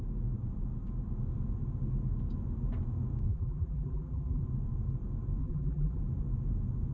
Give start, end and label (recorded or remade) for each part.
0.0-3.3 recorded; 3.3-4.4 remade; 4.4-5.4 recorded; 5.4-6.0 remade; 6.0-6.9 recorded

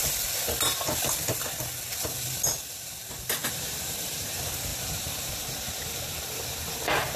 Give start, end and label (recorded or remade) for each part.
0.0-3.4 recorded; 3.4-4.3 remade; 4.3-4.7 recorded; 4.7-5.3 remade; 5.3-7.2 recorded

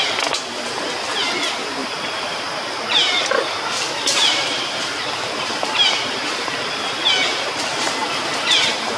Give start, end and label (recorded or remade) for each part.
0.0-1.8 recorded; 1.8-6.8 remade; 6.8-9.0 recorded

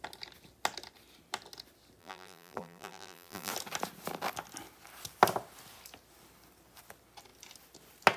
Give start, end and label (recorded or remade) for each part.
0.0-2.0 recorded; 2.0-3.5 remade; 3.5-8.2 recorded

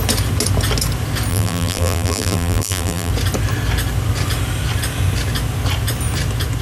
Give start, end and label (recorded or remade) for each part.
0.0-1.3 recorded; 1.3-3.1 remade; 3.1-6.6 recorded